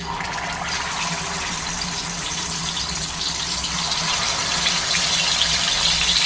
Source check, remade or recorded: recorded